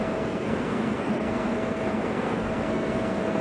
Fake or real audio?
fake